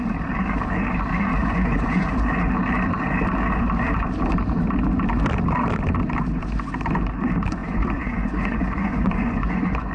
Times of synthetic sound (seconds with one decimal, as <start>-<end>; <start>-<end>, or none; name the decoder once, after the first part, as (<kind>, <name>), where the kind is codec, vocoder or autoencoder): 1.4-2.1 (vocoder, Vocos); 7.6-9.9